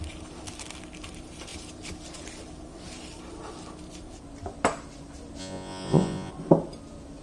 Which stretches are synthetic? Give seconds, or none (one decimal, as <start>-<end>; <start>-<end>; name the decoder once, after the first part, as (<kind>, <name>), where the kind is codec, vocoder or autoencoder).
5.4-6.3 (vocoder, Vocos)